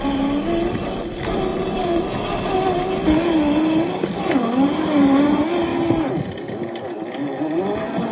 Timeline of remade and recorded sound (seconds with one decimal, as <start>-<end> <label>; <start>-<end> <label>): 0.0-1.5 recorded; 1.5-2.0 remade; 2.0-8.1 recorded